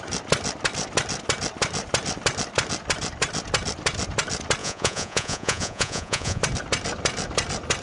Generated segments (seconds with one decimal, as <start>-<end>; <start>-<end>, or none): 4.6-6.4